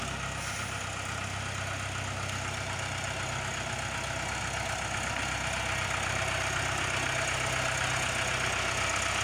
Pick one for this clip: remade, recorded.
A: recorded